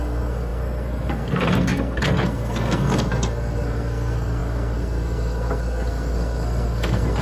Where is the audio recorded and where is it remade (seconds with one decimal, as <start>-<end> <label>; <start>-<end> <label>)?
0.0-7.2 remade